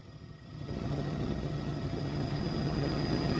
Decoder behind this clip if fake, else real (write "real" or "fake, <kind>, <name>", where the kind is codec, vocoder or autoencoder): fake, vocoder, HiFi-GAN